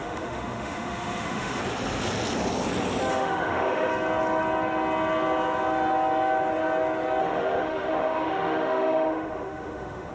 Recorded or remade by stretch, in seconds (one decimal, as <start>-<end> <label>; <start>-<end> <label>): 0.0-1.6 remade; 1.6-3.1 recorded; 3.1-3.9 remade; 3.9-7.2 recorded; 7.2-10.1 remade